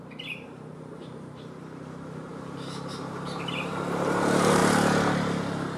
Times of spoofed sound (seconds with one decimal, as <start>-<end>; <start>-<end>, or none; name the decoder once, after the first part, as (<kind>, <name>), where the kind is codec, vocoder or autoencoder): 0.0-4.6 (vocoder, BigVGAN v2)